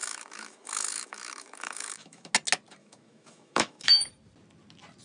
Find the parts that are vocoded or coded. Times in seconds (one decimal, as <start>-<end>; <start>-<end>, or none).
0.0-2.3; 2.8-4.1